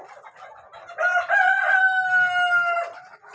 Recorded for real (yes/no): yes